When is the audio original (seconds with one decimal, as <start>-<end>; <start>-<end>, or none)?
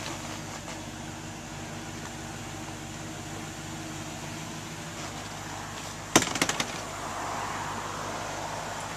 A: 0.0-9.0